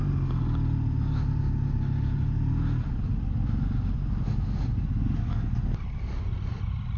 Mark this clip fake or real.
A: real